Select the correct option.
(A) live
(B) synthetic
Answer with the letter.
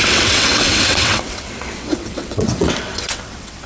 B